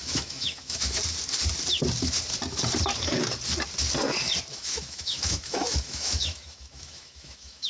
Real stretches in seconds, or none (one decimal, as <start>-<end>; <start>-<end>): 1.0-4.5

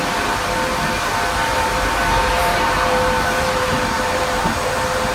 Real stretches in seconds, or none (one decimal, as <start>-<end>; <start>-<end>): 0.0-1.5; 4.4-5.1